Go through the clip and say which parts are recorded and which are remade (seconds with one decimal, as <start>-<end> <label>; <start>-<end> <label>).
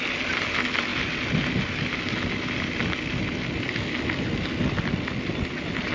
0.0-5.9 recorded